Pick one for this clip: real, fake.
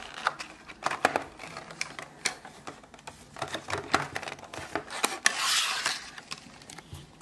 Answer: real